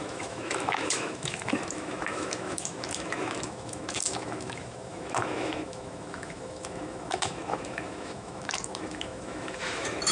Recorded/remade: remade